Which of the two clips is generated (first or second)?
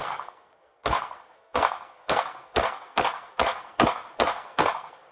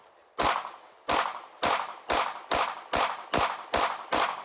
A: first